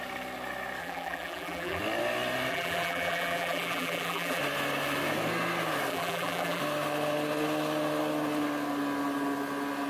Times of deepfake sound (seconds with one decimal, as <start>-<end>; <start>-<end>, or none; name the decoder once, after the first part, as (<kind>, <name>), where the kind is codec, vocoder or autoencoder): 0.8-1.8 (vocoder, BigVGAN v2); 2.5-4.4; 5.9-6.6